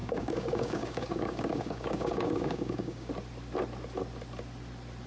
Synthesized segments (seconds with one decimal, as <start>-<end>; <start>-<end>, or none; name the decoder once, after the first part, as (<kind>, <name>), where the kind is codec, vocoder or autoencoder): 0.0-3.1 (codec, DAC)